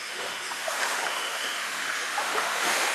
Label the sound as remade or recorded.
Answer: remade